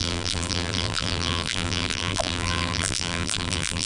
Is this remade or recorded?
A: remade